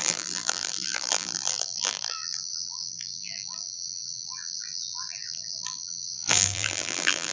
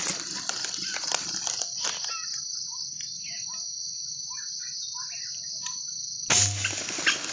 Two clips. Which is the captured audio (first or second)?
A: second